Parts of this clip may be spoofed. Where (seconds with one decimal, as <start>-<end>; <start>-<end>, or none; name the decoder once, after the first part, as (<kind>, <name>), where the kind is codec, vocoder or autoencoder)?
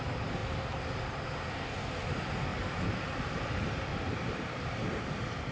2.5-3.5 (vocoder, BigVGAN v2); 3.9-5.0